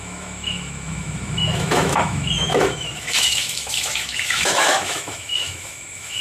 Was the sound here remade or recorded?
remade